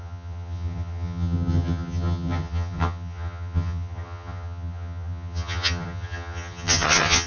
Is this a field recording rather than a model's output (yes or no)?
no